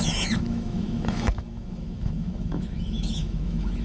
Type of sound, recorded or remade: remade